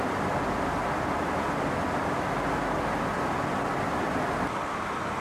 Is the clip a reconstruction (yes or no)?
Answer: no